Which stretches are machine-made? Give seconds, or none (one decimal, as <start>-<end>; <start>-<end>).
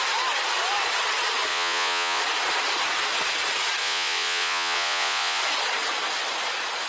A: 1.5-2.2; 3.8-5.4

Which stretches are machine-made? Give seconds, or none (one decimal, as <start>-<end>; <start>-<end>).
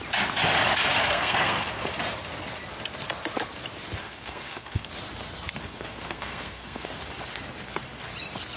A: 1.0-1.7; 4.0-4.9; 5.6-6.9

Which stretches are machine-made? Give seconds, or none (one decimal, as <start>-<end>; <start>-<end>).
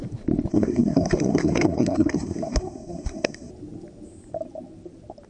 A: 0.5-3.5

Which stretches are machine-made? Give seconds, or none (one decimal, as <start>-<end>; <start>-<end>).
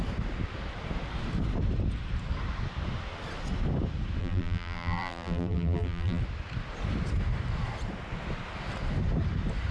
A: 4.2-6.2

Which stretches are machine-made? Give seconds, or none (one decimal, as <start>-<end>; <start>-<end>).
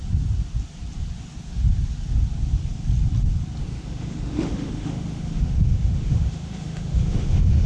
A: 3.6-7.7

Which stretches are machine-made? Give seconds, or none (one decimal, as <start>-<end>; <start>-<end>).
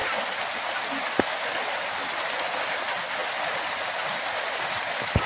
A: none